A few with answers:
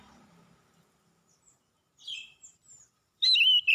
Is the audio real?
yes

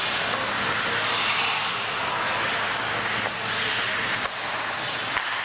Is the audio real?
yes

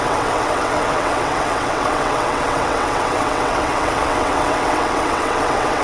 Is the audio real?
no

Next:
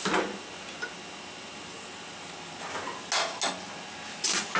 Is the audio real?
yes